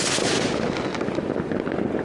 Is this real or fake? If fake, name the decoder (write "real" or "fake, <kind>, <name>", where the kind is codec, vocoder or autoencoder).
real